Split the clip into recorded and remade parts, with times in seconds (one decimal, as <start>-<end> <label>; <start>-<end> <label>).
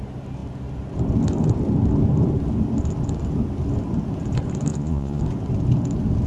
0.0-4.7 recorded; 4.7-5.2 remade; 5.2-6.3 recorded